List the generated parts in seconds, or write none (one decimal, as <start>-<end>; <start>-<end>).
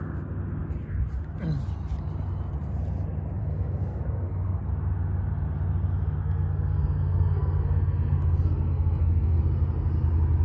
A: 3.4-4.6; 6.2-9.4